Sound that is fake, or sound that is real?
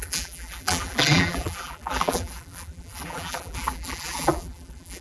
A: fake